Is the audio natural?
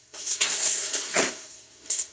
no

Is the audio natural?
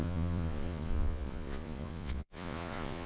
no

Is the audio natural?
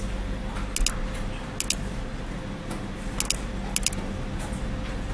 yes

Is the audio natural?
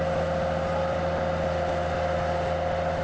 yes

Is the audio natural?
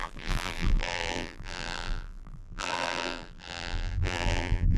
no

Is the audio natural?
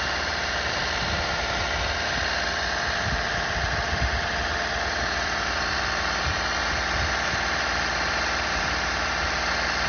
yes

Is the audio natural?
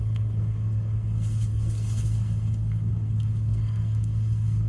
no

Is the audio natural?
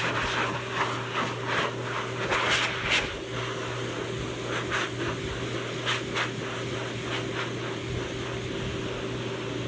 yes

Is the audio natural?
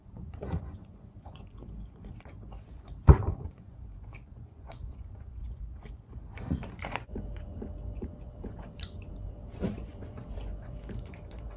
no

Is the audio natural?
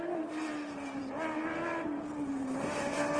no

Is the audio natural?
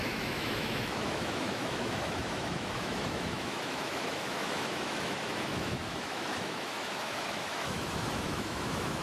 no